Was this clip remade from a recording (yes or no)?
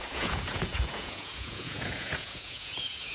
yes